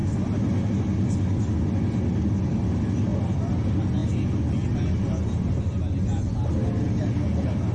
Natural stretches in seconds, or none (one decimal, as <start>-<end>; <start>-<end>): 0.0-7.7